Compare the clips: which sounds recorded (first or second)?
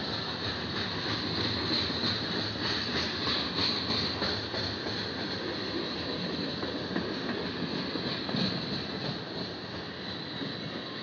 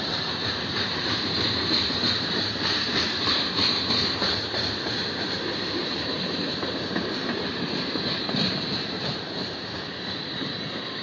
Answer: first